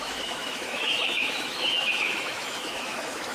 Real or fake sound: fake